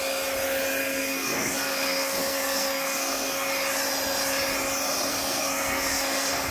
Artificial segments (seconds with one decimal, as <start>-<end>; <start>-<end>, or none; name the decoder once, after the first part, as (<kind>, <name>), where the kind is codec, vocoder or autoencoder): 0.8-3.5 (codec, SNAC); 5.1-6.5